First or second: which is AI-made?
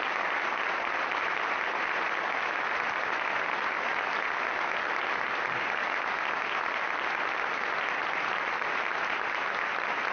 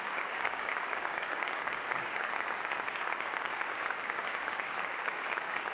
second